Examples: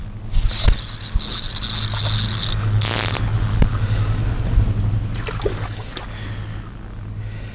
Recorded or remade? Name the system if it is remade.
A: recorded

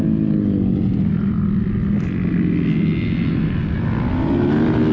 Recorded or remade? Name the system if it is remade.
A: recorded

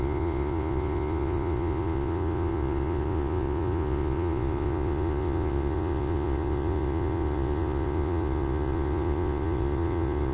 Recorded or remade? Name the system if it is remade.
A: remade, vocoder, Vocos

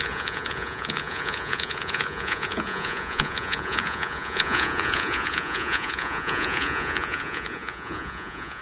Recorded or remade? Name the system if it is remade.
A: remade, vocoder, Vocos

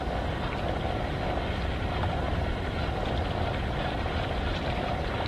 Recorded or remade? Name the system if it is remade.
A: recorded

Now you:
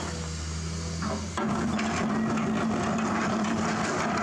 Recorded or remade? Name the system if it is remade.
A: recorded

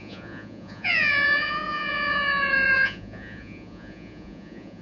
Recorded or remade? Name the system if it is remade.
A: remade, vocoder, Vocos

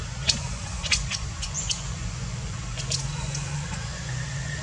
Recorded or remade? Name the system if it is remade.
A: remade, vocoder, Vocos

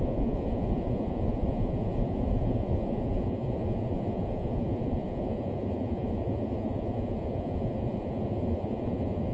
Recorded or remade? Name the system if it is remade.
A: remade, vocoder, Vocos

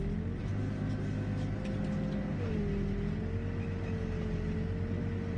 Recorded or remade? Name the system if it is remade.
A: recorded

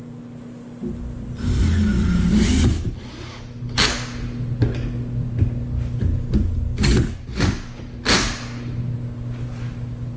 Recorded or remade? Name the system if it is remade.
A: recorded